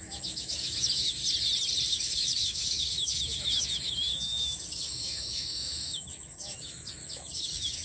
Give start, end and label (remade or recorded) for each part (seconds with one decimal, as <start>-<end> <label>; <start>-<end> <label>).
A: 0.0-1.2 remade; 1.2-1.9 recorded; 1.9-7.8 remade

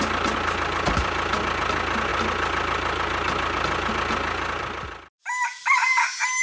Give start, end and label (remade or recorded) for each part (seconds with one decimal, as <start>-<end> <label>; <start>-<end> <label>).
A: 0.0-6.4 recorded

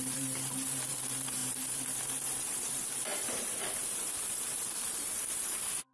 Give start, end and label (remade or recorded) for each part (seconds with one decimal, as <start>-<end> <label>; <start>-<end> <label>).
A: 0.0-5.9 remade

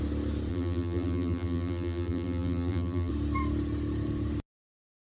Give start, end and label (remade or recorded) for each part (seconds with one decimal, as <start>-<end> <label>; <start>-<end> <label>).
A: 0.0-0.5 recorded; 0.5-3.1 remade; 3.1-5.1 recorded

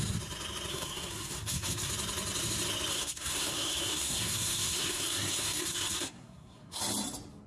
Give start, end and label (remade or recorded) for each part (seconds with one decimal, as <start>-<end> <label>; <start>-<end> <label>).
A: 0.0-0.7 recorded; 0.7-1.9 remade; 1.9-2.9 recorded; 2.9-6.8 remade; 6.8-7.5 recorded

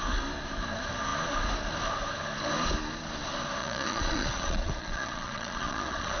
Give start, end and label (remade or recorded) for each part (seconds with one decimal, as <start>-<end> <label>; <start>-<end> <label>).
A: 0.0-3.6 recorded; 3.6-6.2 remade

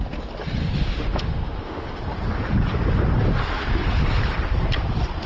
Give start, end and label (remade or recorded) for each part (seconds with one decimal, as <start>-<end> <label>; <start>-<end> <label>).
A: 0.0-0.6 recorded; 0.6-2.0 remade; 2.0-5.3 recorded